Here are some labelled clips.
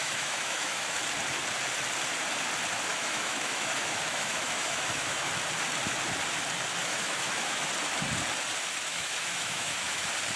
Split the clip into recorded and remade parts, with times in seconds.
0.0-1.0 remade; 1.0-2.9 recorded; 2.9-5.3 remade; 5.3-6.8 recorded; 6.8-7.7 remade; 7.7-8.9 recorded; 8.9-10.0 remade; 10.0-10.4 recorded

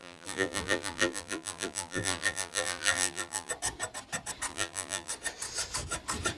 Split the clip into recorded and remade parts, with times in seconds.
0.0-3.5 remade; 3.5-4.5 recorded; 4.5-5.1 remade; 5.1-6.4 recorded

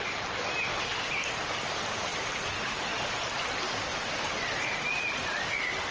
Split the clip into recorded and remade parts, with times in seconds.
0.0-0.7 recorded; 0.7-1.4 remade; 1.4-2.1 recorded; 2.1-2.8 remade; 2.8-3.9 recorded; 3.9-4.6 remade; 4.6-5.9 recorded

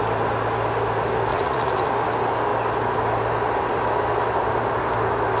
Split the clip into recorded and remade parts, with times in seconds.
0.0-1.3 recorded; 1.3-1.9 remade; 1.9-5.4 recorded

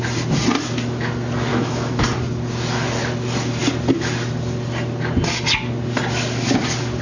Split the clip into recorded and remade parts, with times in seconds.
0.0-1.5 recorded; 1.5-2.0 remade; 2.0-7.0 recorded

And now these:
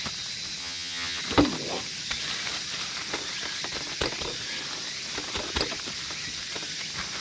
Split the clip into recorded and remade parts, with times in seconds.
0.0-0.6 recorded; 0.6-1.2 remade; 1.2-7.2 recorded

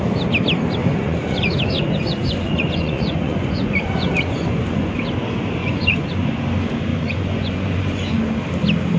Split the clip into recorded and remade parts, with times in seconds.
0.0-0.8 recorded; 0.8-5.0 remade; 5.0-5.6 recorded; 5.6-6.4 remade; 6.4-6.9 recorded; 6.9-8.2 remade; 8.2-9.0 recorded